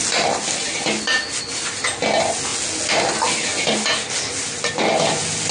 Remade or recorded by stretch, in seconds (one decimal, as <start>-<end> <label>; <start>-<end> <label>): 0.0-5.5 recorded